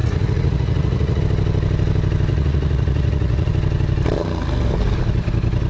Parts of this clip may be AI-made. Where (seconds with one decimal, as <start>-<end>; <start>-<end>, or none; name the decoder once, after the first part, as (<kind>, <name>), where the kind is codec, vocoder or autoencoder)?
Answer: 0.0-1.2 (vocoder, Vocos); 2.3-3.5